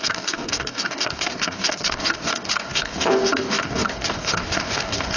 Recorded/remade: remade